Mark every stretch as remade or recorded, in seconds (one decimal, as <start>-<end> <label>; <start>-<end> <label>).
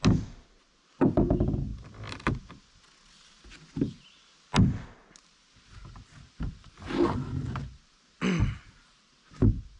0.0-9.8 recorded